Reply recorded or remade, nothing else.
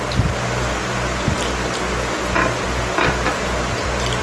recorded